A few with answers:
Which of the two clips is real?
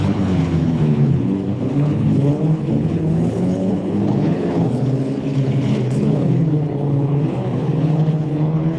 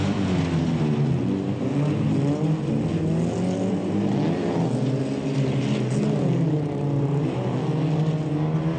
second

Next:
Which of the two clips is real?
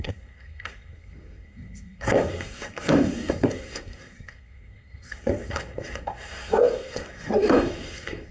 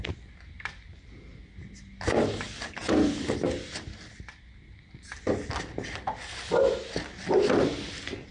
second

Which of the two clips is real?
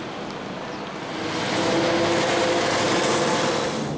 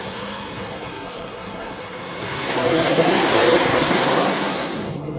first